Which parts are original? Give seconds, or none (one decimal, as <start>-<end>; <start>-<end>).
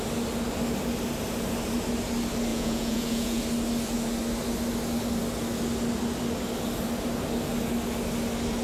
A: 0.0-2.5; 3.4-8.6